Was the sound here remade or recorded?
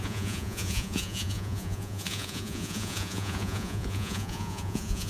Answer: remade